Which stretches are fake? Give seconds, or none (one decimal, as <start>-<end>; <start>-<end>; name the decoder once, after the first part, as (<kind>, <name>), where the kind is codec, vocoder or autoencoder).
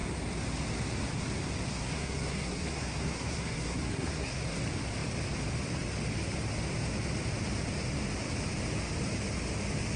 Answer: 1.7-4.6 (codec, SNAC)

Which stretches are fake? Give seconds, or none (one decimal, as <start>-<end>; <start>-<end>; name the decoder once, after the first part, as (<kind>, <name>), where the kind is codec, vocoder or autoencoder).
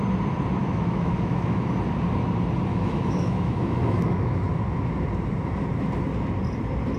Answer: 0.6-1.7 (autoencoder, DAC-VAE); 2.7-4.5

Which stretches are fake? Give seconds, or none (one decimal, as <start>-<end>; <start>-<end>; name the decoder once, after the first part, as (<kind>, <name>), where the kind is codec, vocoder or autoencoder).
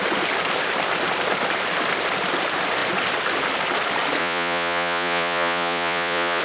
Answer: 4.2-6.4 (vocoder, Vocos)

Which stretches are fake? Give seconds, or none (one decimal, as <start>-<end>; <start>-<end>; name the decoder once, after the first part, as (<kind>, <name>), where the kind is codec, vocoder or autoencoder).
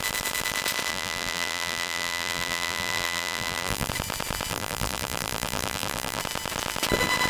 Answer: 0.9-3.9 (vocoder, BigVGAN v2); 4.5-6.2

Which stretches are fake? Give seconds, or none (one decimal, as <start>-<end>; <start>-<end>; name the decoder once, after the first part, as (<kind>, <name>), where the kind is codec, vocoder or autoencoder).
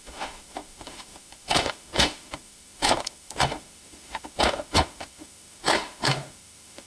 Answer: 0.0-6.9 (autoencoder, DAC-VAE)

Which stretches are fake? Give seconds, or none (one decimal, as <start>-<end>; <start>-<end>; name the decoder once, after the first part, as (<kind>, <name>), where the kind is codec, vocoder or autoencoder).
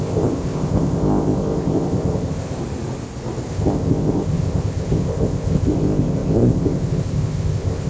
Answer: 0.0-2.6 (codec, ZipCodec); 3.5-7.9